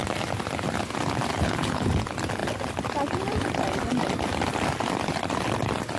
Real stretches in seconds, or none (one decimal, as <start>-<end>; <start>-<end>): 0.0-1.3; 1.9-6.0